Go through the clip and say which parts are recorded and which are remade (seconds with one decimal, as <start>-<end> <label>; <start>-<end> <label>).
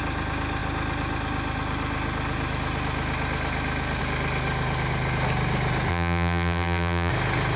0.0-5.9 recorded; 5.9-7.1 remade; 7.1-7.6 recorded